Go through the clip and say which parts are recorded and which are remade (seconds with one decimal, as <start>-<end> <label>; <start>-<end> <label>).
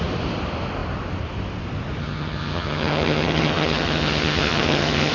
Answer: 0.0-2.0 recorded; 2.0-5.1 remade